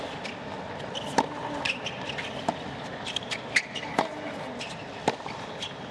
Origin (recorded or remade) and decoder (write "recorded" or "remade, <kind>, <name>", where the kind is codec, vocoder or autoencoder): recorded